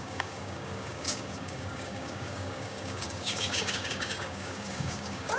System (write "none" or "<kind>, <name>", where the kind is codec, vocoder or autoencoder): codec, DAC